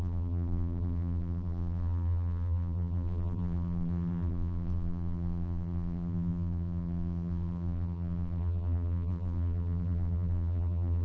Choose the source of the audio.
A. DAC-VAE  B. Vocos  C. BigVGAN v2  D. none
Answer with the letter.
C